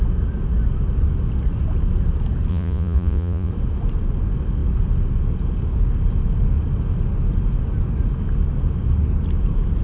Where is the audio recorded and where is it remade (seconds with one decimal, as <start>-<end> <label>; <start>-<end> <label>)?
0.0-2.5 recorded; 2.5-3.5 remade; 3.5-9.8 recorded